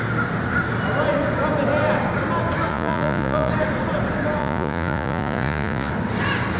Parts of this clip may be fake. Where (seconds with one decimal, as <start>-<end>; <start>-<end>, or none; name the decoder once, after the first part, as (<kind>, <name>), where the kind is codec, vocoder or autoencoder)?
2.7-3.5 (vocoder, Vocos); 4.4-5.9